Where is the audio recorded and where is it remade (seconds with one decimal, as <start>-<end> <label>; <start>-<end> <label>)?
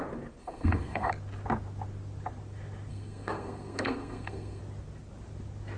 0.0-0.4 recorded; 0.4-1.1 remade; 1.1-2.9 recorded; 2.9-4.6 remade; 4.6-5.8 recorded